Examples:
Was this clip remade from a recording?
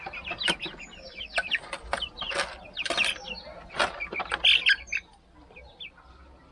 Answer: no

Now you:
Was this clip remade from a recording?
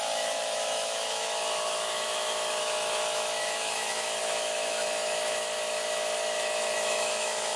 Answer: yes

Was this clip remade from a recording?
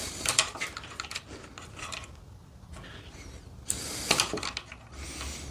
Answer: no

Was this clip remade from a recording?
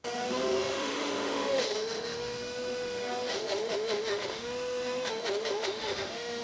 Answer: yes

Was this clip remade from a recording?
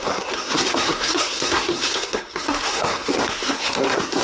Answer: yes